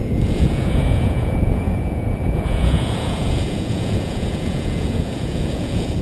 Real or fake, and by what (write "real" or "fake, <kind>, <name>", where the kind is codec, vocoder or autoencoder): fake, vocoder, Vocos